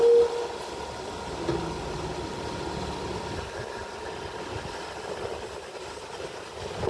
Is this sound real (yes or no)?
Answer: yes